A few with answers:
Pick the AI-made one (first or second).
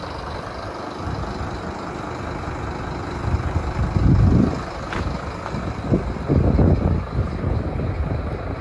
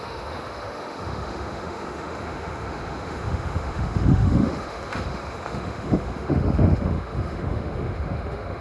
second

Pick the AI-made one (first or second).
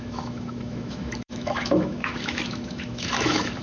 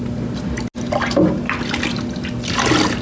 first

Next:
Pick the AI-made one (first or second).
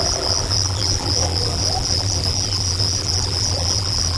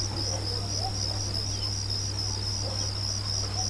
first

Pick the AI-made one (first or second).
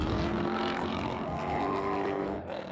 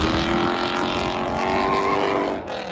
first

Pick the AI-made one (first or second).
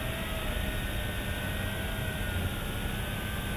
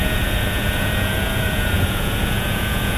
second